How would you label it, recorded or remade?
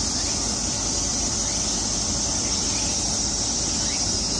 recorded